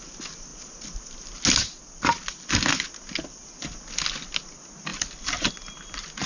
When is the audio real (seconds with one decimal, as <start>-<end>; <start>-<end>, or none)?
0.0-4.9; 5.5-6.3